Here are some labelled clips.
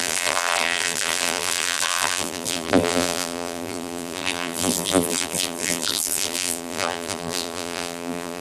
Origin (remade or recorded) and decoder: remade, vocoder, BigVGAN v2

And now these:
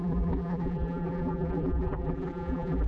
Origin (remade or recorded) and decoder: remade, vocoder, BigVGAN v2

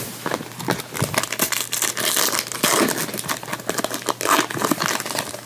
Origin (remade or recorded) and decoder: recorded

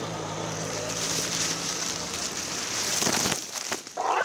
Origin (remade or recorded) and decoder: remade, vocoder, BigVGAN v2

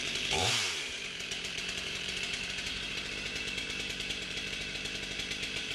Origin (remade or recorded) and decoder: remade, vocoder, BigVGAN v2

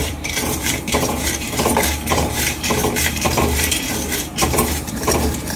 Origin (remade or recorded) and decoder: remade, vocoder, BigVGAN v2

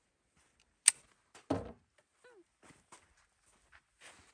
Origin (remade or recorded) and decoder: recorded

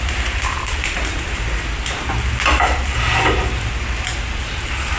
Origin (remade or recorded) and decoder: recorded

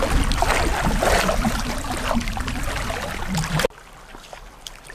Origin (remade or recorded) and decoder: recorded